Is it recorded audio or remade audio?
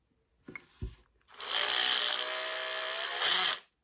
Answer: recorded